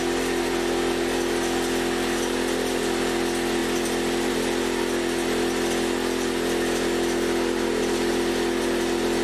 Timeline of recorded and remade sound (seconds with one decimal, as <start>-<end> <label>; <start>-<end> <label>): 0.0-3.6 recorded; 3.6-4.3 remade; 4.3-9.2 recorded